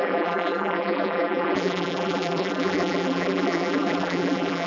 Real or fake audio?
fake